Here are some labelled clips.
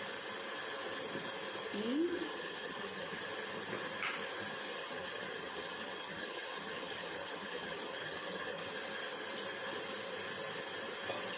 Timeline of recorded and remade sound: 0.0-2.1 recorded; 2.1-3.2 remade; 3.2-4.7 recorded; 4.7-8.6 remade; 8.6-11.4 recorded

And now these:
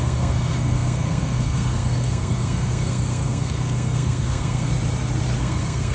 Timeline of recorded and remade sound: 0.0-4.7 remade; 4.7-5.4 recorded; 5.4-5.9 remade

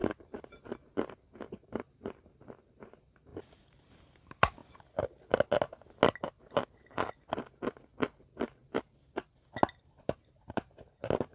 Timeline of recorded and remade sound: 0.0-1.5 recorded; 1.5-4.6 remade; 4.6-8.2 recorded; 8.2-8.6 remade; 8.6-9.8 recorded; 9.8-11.3 remade

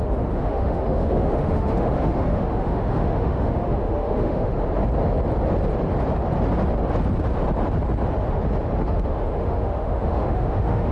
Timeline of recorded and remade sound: 0.0-4.5 remade; 4.5-8.8 recorded; 8.8-10.9 remade

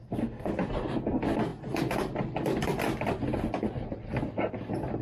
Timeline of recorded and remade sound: 0.0-0.5 remade; 0.5-5.0 recorded

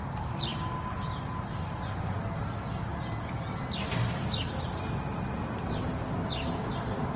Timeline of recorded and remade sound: 0.0-7.2 recorded

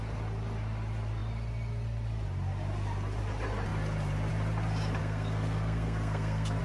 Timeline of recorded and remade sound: 0.0-5.0 recorded; 5.0-6.6 remade

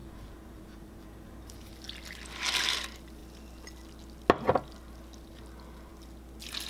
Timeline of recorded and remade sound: 0.0-1.7 remade; 1.7-6.7 recorded